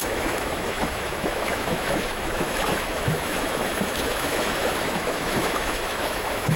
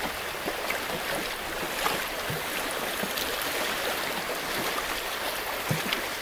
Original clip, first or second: second